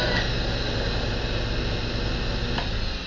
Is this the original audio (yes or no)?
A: yes